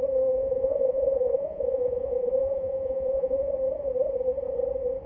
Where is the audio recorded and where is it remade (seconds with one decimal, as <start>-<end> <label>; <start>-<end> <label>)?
0.0-0.4 recorded; 0.4-3.5 remade; 3.5-5.1 recorded

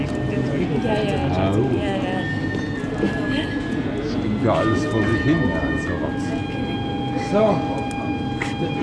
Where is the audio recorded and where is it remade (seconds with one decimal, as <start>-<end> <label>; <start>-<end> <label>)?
0.0-8.8 recorded

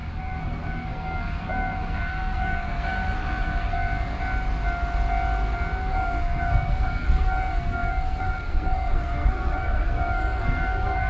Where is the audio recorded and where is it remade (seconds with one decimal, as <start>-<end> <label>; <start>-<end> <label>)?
0.0-4.1 remade; 4.1-5.9 recorded; 5.9-11.1 remade

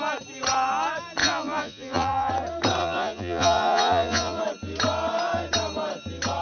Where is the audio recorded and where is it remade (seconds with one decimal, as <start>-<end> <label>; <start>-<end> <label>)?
0.0-1.2 recorded; 1.2-2.3 remade; 2.3-2.8 recorded; 2.8-4.4 remade; 4.4-6.4 recorded